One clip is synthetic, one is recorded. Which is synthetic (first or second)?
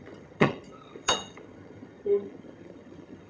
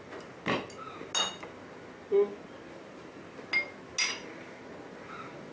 first